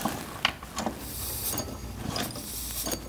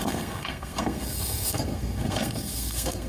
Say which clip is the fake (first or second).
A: second